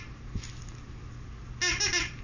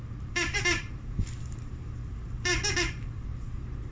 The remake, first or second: second